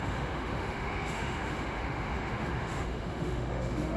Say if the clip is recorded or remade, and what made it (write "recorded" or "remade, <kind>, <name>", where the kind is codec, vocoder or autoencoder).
remade, autoencoder, DAC-VAE